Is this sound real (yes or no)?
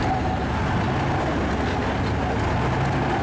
yes